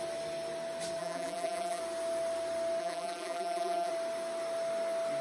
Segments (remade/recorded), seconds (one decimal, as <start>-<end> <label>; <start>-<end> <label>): 0.0-1.0 recorded; 1.0-1.8 remade; 1.8-2.8 recorded; 2.8-3.9 remade; 3.9-5.2 recorded